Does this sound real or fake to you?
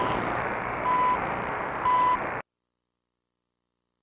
real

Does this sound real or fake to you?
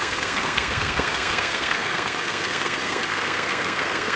fake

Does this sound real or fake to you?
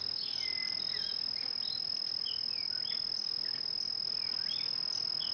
real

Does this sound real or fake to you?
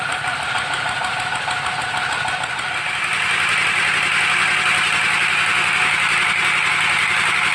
real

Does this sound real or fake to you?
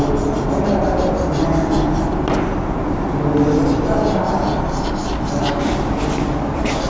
real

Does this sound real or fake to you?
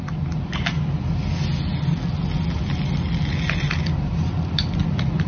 real